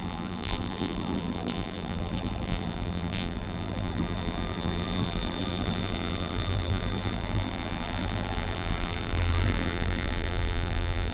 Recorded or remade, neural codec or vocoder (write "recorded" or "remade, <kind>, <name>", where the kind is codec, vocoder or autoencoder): remade, vocoder, BigVGAN v2